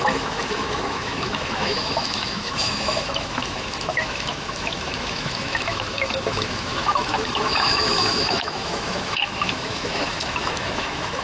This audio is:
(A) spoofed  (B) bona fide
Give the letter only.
A